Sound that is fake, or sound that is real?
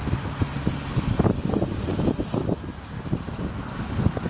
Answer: real